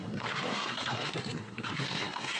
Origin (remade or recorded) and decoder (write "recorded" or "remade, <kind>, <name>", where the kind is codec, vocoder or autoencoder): remade, codec, SNAC